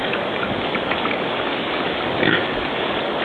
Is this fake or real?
fake